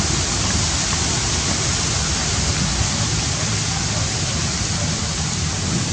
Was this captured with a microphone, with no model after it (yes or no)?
yes